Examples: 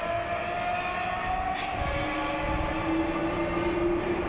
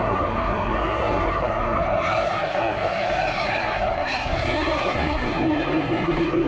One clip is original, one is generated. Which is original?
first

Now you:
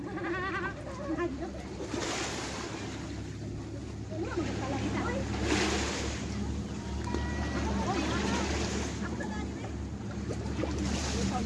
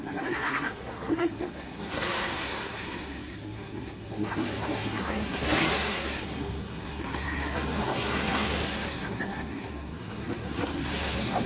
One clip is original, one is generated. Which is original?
first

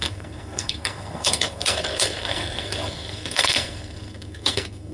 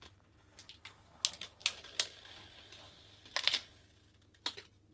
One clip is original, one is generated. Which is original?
second